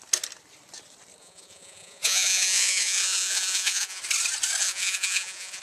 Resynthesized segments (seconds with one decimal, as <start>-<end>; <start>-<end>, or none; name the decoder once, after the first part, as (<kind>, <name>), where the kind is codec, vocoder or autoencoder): 1.2-4.0 (vocoder, Vocos); 4.6-5.6

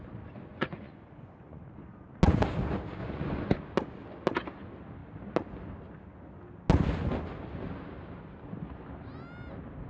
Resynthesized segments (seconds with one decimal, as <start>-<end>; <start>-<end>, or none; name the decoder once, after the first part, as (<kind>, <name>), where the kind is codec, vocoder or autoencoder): 0.5-1.6 (vocoder, Vocos); 3.0-3.5

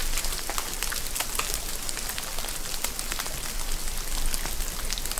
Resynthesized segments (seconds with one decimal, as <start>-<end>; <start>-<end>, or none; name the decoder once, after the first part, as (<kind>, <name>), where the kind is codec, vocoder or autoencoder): none

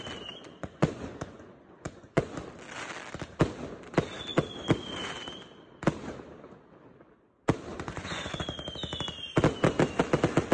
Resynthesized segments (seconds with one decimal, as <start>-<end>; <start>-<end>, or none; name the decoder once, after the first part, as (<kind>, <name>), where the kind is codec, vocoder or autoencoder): 0.4-2.3 (vocoder, Vocos); 7.7-8.4